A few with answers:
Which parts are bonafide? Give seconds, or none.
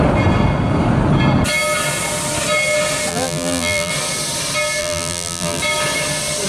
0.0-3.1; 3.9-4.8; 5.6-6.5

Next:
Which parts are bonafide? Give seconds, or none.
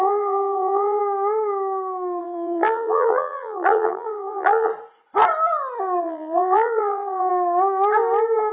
1.0-2.2; 4.7-6.0; 7.3-8.5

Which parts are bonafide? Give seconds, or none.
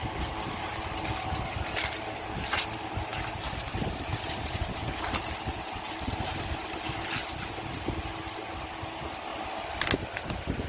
0.7-10.7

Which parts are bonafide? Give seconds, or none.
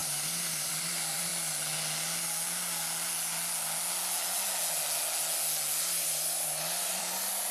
1.3-5.8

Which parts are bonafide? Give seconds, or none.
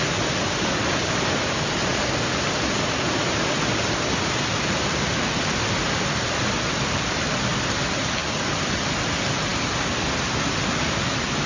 0.0-8.2; 9.1-11.5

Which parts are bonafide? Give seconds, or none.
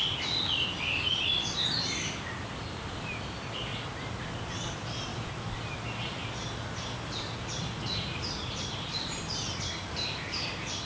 3.7-4.3; 5.1-9.6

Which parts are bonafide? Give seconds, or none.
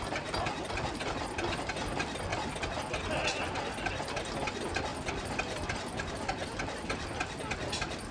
0.0-4.9; 6.0-8.1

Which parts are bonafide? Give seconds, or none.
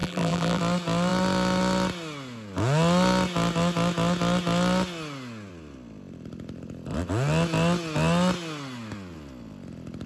0.6-10.1